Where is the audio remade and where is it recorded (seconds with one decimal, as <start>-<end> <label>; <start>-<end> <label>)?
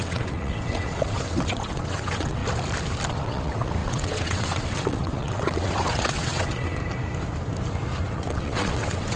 0.0-2.4 remade; 2.4-3.1 recorded; 3.1-6.8 remade; 6.8-8.1 recorded; 8.1-9.2 remade